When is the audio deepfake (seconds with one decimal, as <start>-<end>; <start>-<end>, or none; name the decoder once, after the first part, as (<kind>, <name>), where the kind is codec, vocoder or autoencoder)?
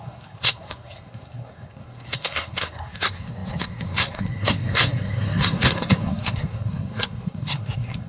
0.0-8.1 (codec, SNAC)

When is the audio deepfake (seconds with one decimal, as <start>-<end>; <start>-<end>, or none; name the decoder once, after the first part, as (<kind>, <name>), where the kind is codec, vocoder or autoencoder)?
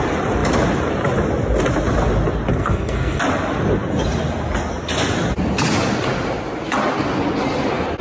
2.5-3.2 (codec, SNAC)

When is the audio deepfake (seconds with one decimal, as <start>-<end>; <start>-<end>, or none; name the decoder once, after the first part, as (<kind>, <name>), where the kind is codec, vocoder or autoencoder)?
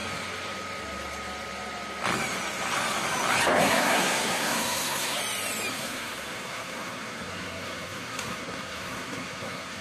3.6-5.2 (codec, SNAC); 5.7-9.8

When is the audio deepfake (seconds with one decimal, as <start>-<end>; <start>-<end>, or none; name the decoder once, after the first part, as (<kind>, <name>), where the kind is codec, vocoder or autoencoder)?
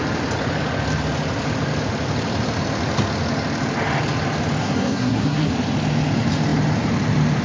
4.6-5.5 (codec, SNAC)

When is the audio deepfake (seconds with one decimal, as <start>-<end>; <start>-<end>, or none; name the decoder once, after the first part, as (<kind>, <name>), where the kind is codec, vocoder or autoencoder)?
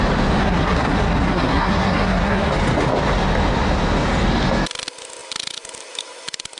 0.4-2.5 (codec, SNAC)